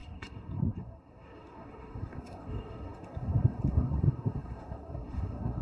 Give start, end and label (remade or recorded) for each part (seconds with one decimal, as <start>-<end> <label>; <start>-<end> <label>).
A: 0.0-5.6 remade